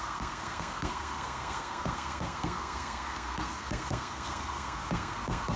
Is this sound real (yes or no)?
no